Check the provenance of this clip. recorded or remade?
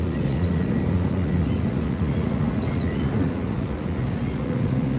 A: remade